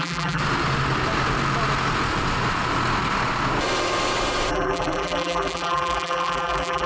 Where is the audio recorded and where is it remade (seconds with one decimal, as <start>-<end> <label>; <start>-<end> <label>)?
0.0-0.4 remade; 0.4-4.5 recorded; 4.5-6.9 remade

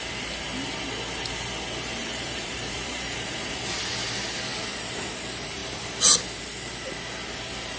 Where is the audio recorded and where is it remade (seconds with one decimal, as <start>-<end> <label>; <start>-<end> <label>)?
0.0-2.0 recorded; 2.0-3.8 remade; 3.8-7.8 recorded

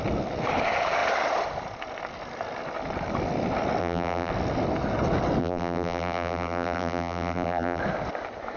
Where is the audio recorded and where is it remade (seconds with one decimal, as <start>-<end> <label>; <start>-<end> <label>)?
0.0-3.8 recorded; 3.8-4.3 remade; 4.3-5.4 recorded; 5.4-7.8 remade; 7.8-8.6 recorded

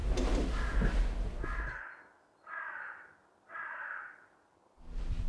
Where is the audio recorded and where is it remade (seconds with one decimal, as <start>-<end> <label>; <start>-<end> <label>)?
0.0-5.3 recorded

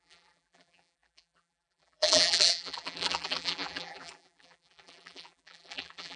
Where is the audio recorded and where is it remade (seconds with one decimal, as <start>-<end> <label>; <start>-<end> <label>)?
0.0-6.2 remade